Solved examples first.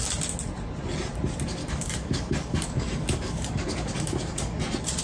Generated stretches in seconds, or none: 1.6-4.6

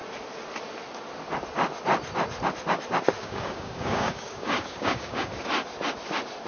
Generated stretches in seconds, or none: 3.2-5.3

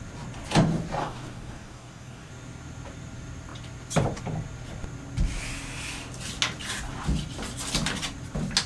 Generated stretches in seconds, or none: 1.0-2.3

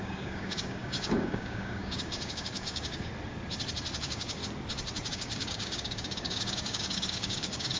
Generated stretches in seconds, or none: 0.0-3.1; 4.0-4.4; 5.1-7.8

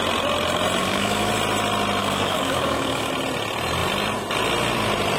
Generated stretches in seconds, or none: 0.8-1.3; 2.0-3.1

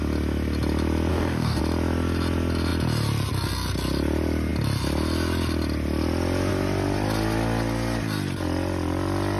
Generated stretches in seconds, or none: 1.1-1.6